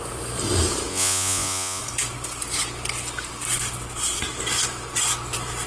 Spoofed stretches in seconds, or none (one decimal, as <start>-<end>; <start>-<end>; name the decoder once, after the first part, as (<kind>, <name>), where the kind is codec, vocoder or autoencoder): 0.9-1.8 (vocoder, Vocos)